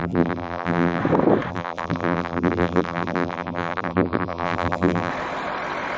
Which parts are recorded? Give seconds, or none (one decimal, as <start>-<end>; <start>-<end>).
1.0-1.5; 5.1-6.0